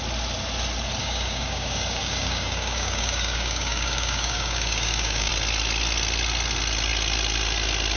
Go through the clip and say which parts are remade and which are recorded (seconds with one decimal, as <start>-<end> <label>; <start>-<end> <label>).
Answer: 0.0-1.0 recorded; 1.0-5.3 remade; 5.3-8.0 recorded